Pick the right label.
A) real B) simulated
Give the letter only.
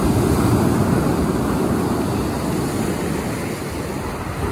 A